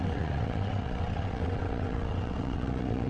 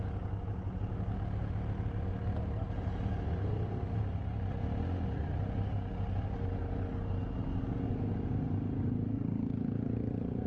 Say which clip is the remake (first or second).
first